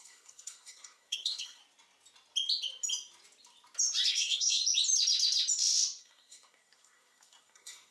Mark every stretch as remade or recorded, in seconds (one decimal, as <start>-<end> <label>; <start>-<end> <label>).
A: 0.0-1.6 remade; 1.6-4.1 recorded; 4.1-4.6 remade; 4.6-6.0 recorded; 6.0-7.9 remade